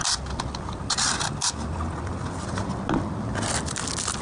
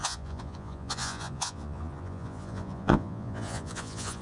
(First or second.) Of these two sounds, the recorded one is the first